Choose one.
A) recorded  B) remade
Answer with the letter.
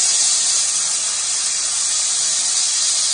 A